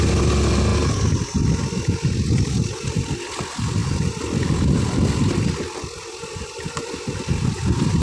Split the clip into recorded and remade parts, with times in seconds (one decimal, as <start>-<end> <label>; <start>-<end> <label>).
0.0-8.0 recorded